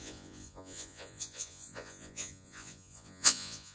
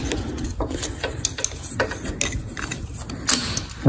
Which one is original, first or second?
second